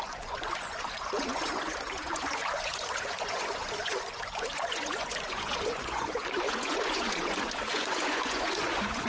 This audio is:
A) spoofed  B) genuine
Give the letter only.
A